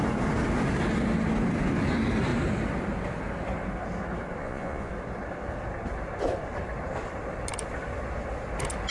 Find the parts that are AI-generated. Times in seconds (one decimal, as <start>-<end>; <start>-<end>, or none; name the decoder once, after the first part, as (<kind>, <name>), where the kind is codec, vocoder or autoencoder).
4.4-4.9 (vocoder, Vocos)